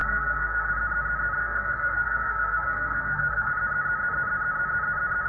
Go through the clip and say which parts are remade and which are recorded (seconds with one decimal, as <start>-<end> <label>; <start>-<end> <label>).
0.0-0.7 remade; 0.7-1.4 recorded; 1.4-3.5 remade; 3.5-5.3 recorded